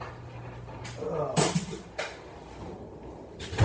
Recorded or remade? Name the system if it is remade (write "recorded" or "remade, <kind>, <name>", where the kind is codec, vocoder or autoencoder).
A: recorded